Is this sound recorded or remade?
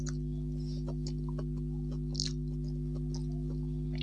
recorded